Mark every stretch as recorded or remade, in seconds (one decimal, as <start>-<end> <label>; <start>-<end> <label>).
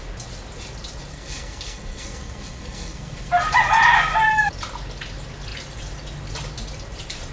0.0-1.1 recorded; 1.1-3.3 remade; 3.3-7.3 recorded